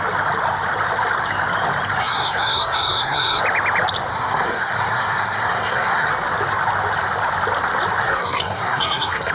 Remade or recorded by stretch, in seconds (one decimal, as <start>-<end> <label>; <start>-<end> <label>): 0.0-2.0 recorded; 2.0-3.4 remade; 3.4-4.1 recorded; 4.1-6.1 remade; 6.1-8.0 recorded; 8.0-9.3 remade